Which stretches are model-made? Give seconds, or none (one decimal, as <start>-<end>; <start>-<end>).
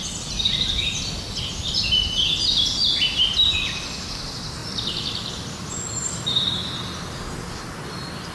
none